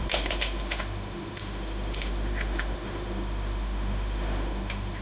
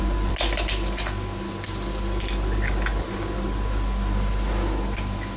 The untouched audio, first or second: second